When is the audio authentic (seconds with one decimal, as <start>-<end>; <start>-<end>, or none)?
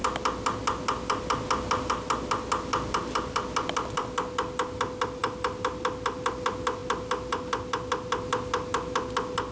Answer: 0.0-9.5